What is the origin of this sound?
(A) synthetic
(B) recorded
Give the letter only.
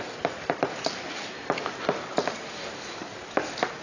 B